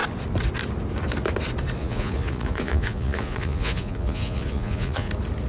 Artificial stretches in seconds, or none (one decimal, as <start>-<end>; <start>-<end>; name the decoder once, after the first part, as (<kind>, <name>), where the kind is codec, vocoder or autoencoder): 1.8-5.1 (vocoder, Vocos)